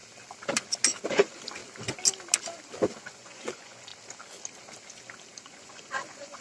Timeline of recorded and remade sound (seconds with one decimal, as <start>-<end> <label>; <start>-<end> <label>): 0.0-1.1 recorded; 1.1-1.6 remade; 1.6-3.0 recorded; 3.0-3.9 remade; 3.9-5.4 recorded; 5.4-6.4 remade